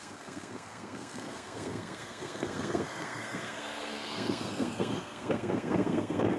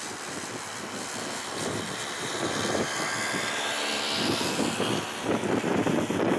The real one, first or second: second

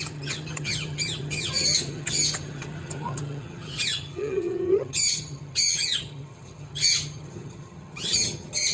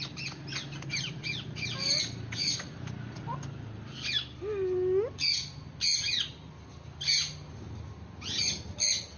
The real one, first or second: second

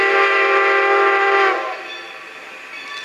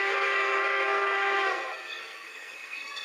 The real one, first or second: first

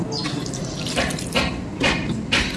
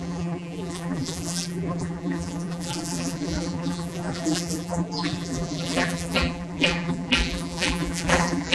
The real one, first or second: first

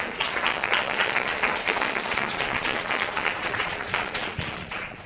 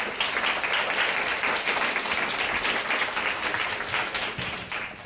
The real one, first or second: second